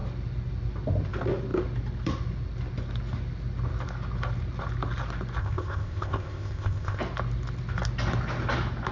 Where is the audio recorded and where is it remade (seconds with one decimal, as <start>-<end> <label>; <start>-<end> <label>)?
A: 0.0-5.4 recorded; 5.4-7.0 remade; 7.0-8.9 recorded